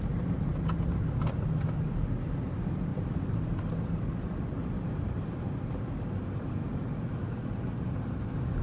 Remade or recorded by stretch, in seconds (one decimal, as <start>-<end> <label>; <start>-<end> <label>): 0.0-8.6 recorded